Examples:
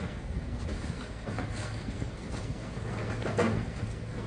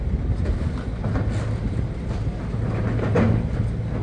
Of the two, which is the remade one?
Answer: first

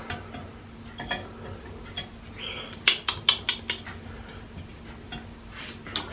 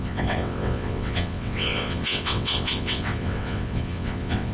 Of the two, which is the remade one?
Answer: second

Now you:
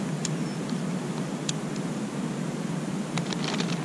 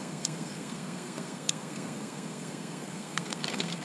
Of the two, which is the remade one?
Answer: second